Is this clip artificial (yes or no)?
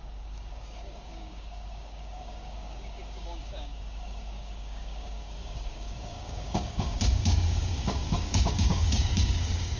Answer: yes